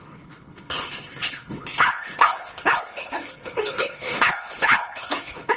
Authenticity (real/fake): fake